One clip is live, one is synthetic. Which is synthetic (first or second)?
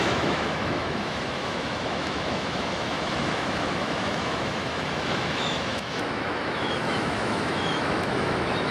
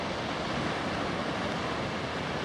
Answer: first